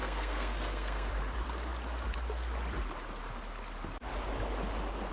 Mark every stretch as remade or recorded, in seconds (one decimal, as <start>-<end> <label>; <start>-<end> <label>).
0.0-1.1 remade; 1.1-5.1 recorded